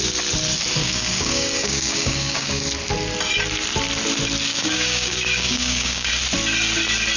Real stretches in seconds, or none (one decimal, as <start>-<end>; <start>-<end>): 0.0-0.8; 2.6-4.5; 6.1-7.2